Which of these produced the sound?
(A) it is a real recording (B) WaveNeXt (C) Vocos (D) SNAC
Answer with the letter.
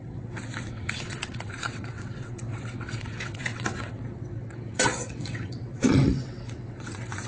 B